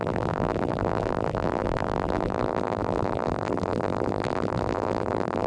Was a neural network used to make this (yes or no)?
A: yes